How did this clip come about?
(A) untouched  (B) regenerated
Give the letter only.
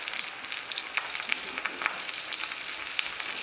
A